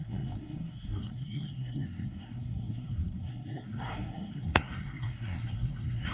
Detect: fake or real fake